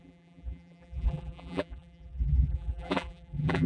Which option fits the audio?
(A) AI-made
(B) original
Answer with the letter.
A